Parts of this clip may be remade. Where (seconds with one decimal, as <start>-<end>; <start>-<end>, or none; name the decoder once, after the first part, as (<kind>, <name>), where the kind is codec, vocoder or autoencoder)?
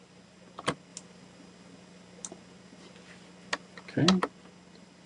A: none